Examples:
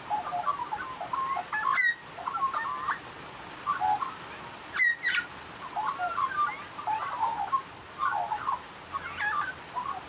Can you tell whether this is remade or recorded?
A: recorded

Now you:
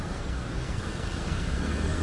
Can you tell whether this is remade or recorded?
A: remade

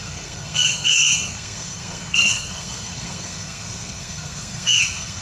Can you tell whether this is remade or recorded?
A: remade